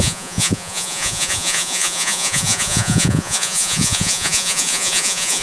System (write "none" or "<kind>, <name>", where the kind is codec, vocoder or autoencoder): vocoder, Vocos